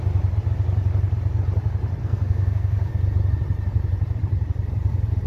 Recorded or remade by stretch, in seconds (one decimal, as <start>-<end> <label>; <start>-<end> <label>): 0.0-2.0 recorded; 2.0-2.9 remade; 2.9-5.3 recorded